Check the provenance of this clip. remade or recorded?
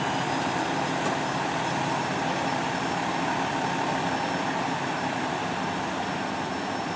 recorded